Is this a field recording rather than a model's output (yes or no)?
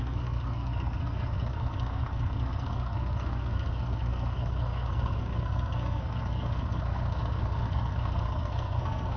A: no